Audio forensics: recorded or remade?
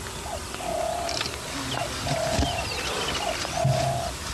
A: recorded